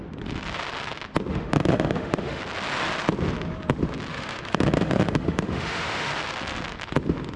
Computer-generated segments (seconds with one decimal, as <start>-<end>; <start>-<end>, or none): 1.3-2.4; 4.1-6.1